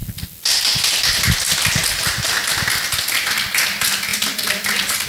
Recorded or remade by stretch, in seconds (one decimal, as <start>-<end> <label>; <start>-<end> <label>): 0.0-5.1 recorded